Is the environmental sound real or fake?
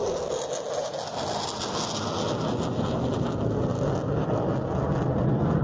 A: real